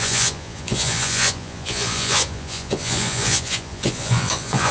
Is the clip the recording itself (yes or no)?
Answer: no